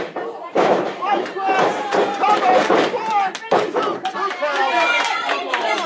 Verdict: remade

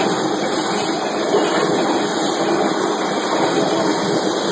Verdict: recorded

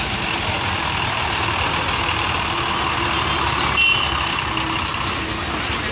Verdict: recorded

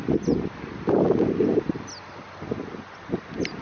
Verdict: recorded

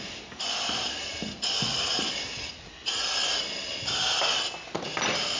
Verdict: recorded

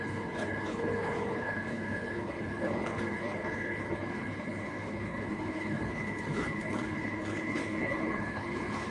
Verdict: remade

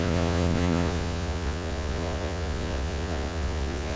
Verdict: remade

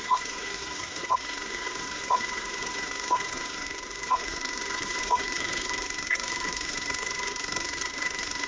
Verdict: remade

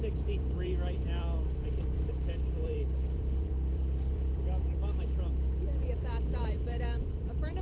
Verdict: remade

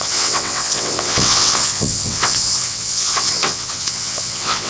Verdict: remade